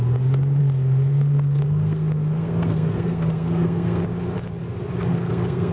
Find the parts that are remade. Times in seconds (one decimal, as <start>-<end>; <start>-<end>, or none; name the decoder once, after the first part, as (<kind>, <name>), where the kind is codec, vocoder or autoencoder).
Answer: 0.6-4.0 (codec, SNAC); 5.1-5.7